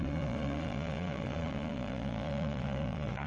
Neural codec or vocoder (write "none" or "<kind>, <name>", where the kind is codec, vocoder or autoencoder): vocoder, Vocos